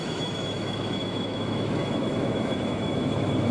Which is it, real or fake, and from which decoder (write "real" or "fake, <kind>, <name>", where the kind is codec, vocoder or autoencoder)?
fake, autoencoder, DAC-VAE